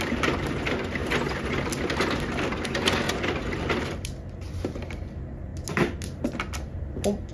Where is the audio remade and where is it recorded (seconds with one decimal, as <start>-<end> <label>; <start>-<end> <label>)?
0.0-7.3 recorded